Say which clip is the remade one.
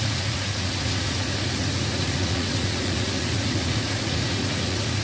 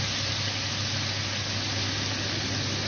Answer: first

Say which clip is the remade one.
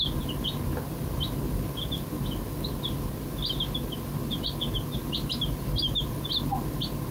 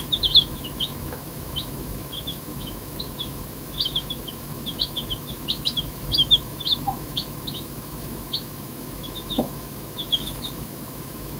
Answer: second